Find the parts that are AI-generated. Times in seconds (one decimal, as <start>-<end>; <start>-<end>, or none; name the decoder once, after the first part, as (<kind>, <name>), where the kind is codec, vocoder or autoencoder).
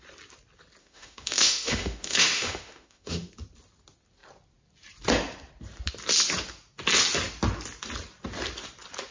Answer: 0.8-3.3 (autoencoder, DAC-VAE)